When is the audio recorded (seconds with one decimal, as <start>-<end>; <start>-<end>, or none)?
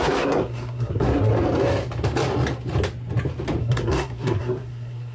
1.3-3.6